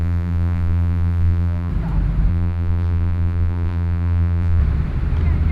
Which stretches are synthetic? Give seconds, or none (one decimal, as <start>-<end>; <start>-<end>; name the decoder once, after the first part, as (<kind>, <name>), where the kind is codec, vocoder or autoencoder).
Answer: 0.0-1.7 (vocoder, BigVGAN v2); 2.3-4.6

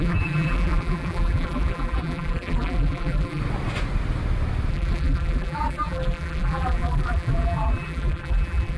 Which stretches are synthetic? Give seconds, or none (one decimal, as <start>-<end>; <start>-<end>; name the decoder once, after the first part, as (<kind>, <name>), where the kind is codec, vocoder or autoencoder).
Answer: 0.0-3.4 (vocoder, BigVGAN v2); 4.7-8.8

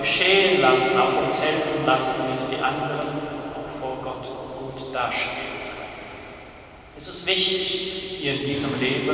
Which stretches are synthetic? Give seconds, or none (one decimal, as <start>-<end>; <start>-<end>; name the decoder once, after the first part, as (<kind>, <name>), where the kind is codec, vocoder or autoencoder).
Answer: 3.9-4.4 (vocoder, BigVGAN v2); 4.9-6.7